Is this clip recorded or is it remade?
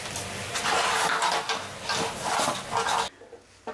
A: recorded